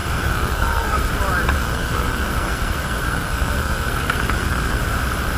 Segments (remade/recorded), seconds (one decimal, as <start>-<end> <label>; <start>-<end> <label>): 0.0-1.1 remade; 1.1-1.6 recorded; 1.6-4.8 remade; 4.8-5.4 recorded